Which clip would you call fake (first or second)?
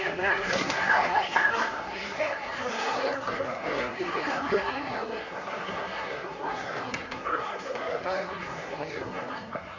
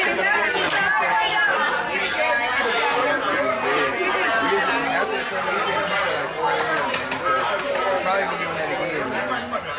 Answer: first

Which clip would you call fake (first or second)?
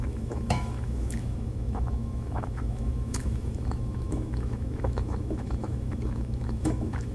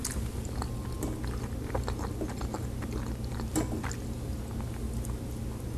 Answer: first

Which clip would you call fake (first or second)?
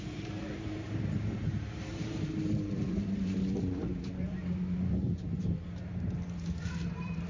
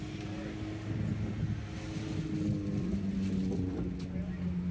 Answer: first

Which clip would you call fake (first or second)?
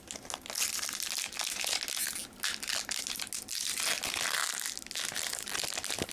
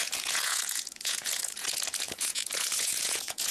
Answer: second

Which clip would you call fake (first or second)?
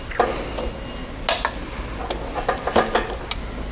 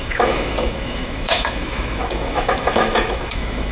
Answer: second